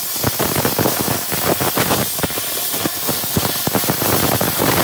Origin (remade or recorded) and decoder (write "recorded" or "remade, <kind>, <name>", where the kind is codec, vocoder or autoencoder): recorded